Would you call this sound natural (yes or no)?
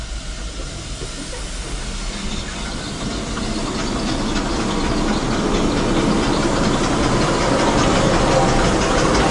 yes